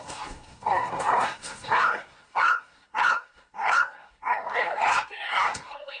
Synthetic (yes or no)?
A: yes